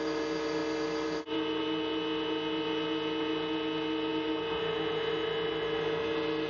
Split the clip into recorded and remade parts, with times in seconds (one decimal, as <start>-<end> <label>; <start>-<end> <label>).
0.0-0.6 recorded; 0.6-1.6 remade; 1.6-4.1 recorded; 4.1-5.1 remade; 5.1-6.5 recorded